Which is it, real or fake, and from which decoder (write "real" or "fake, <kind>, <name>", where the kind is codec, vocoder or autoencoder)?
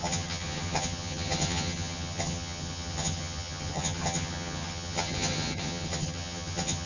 fake, vocoder, HiFi-GAN